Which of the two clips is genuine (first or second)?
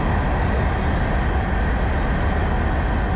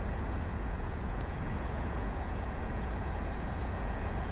first